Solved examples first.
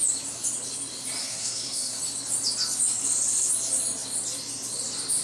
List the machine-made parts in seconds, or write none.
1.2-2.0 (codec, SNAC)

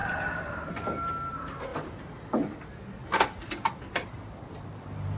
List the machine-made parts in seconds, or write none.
0.0-0.7 (vocoder, BigVGAN v2); 1.7-2.6; 3.0-4.5

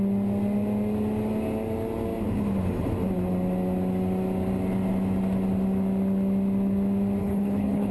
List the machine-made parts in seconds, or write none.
7.2-7.9 (codec, HILCodec)

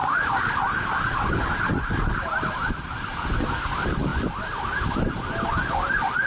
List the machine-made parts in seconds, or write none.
0.0-4.1 (vocoder, BigVGAN v2)

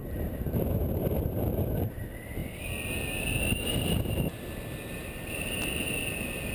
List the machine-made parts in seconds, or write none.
0.0-1.6 (vocoder, BigVGAN v2); 5.0-5.5

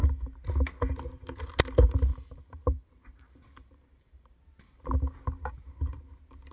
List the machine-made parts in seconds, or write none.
2.1-4.9 (vocoder, BigVGAN v2)

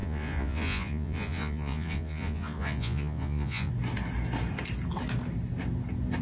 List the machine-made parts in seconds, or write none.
0.0-3.7 (vocoder, Vocos)